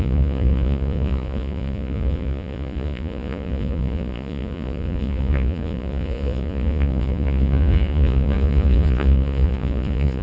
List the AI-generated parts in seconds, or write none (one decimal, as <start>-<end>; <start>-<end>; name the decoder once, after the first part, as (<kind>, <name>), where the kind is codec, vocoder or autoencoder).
0.0-10.2 (vocoder, Vocos)